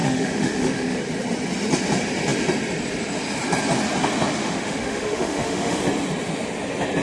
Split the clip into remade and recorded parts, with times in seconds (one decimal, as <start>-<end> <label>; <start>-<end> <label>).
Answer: 0.0-1.0 remade; 1.0-4.4 recorded; 4.4-5.8 remade; 5.8-7.0 recorded

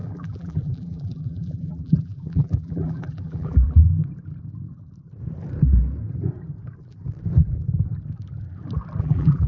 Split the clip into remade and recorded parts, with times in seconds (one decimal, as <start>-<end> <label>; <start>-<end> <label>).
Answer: 0.0-3.8 remade; 3.8-9.0 recorded; 9.0-9.5 remade

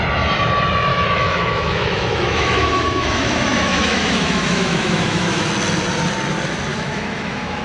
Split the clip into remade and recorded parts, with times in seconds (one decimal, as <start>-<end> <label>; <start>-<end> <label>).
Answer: 0.0-0.9 recorded; 0.9-5.5 remade; 5.5-6.7 recorded; 6.7-7.6 remade